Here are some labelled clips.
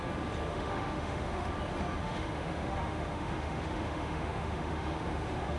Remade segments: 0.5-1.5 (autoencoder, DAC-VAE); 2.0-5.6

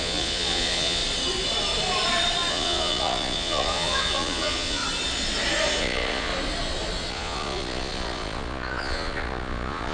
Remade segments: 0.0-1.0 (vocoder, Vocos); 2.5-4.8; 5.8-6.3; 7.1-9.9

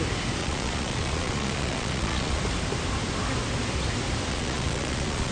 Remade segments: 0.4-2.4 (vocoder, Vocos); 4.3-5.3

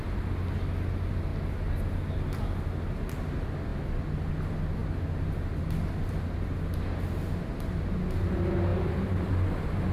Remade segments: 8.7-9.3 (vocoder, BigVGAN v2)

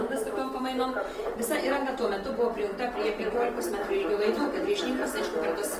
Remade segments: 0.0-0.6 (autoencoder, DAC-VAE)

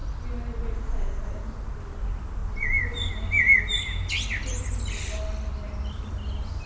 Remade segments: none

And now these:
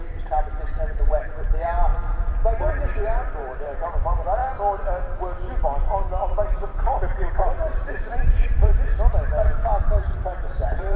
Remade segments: 0.0-1.9 (vocoder, BigVGAN v2); 2.7-4.4; 7.3-8.9; 10.0-11.0

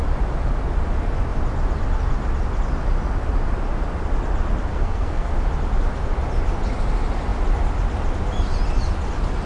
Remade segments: 4.7-5.3 (codec, SNAC)